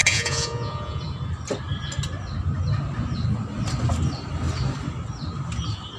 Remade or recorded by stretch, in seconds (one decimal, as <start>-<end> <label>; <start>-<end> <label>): 0.0-1.0 remade; 1.0-6.0 recorded

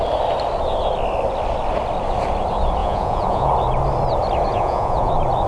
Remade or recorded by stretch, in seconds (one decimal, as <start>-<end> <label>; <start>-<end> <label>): 0.0-2.8 recorded; 2.8-3.5 remade; 3.5-4.5 recorded; 4.5-5.1 remade; 5.1-5.5 recorded

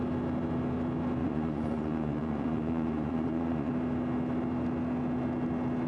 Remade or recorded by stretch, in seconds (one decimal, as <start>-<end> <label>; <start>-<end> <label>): 0.0-1.2 recorded; 1.2-3.7 remade; 3.7-5.9 recorded

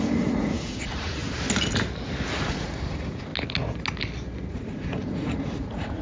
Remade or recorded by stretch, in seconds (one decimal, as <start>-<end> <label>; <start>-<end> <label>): 0.0-1.2 remade; 1.2-2.3 recorded; 2.3-3.3 remade; 3.3-4.5 recorded; 4.5-6.0 remade

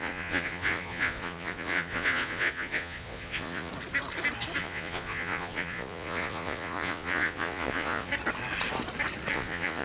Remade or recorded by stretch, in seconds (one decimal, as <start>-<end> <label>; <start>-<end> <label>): 0.0-3.7 remade; 3.7-4.6 recorded; 4.6-8.1 remade; 8.1-9.3 recorded; 9.3-9.8 remade